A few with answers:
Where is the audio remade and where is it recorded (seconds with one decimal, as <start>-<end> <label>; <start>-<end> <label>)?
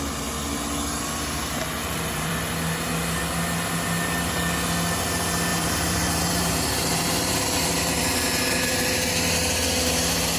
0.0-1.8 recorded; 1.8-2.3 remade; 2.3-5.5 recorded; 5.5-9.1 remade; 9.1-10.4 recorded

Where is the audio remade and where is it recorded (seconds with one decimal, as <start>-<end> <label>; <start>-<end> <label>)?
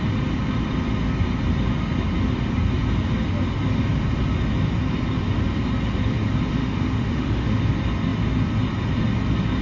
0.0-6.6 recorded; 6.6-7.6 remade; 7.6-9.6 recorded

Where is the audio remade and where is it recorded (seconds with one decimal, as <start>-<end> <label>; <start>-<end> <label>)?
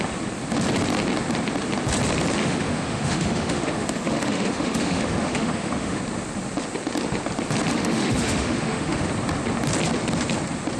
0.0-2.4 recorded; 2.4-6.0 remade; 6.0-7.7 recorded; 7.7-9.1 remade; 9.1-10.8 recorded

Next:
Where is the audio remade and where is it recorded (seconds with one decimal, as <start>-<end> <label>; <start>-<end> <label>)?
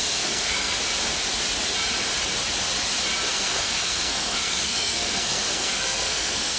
0.0-0.8 remade; 0.8-3.3 recorded; 3.3-6.6 remade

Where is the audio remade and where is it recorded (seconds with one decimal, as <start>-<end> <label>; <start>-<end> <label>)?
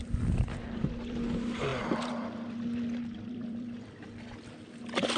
0.0-5.2 remade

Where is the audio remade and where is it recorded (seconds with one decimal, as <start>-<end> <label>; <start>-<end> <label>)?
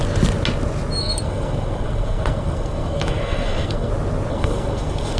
0.0-1.0 recorded; 1.0-3.9 remade; 3.9-4.3 recorded; 4.3-5.2 remade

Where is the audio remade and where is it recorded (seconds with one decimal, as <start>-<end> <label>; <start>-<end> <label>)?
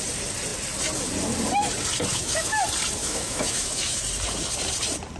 0.0-2.1 recorded; 2.1-2.6 remade; 2.6-3.0 recorded; 3.0-4.0 remade; 4.0-5.2 recorded